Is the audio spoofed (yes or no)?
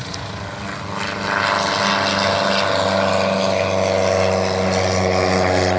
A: no